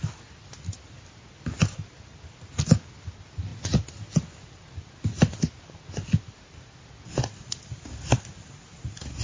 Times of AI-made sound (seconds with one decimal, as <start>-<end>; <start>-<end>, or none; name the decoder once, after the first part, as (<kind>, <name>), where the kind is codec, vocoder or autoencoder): none